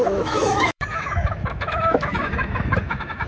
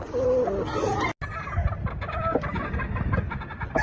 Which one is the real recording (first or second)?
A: second